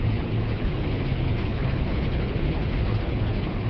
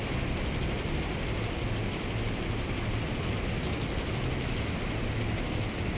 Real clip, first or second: second